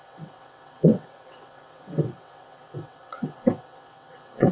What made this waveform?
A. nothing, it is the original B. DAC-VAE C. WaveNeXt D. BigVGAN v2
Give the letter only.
C